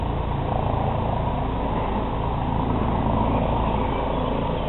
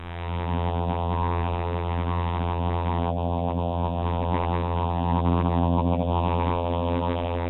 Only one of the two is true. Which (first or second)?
first